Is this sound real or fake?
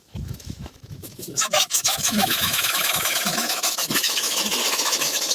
fake